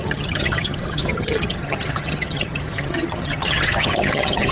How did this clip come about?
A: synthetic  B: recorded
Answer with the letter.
A